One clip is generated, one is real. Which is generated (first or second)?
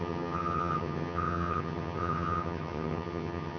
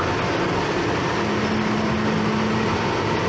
first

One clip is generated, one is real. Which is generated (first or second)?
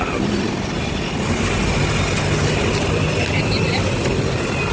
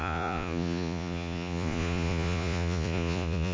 second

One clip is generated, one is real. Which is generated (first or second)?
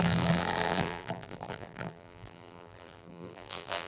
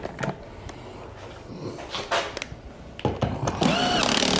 first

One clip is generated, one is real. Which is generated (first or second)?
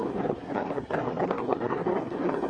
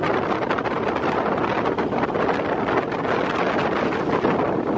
first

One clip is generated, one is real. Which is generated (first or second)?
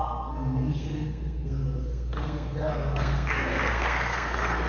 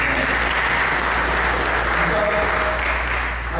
first